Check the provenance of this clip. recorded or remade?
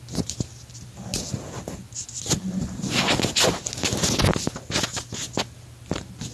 recorded